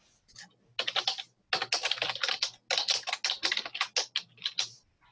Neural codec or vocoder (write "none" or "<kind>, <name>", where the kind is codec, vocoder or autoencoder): none